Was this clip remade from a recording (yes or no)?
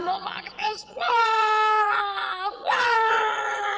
yes